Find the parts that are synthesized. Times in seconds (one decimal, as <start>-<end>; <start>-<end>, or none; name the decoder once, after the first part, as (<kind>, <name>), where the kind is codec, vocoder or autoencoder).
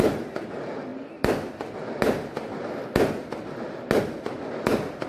none